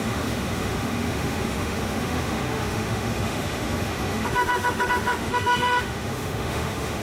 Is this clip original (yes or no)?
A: no